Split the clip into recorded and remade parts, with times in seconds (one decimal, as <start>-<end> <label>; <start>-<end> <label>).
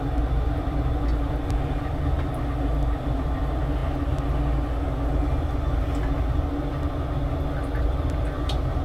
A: 0.0-3.8 remade; 3.8-7.5 recorded; 7.5-8.8 remade